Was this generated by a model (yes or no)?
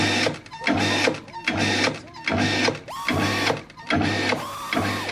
no